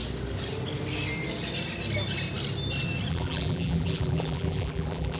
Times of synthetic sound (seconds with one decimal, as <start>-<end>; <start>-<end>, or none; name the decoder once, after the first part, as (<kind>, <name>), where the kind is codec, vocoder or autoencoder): 3.1-5.2 (vocoder, BigVGAN v2)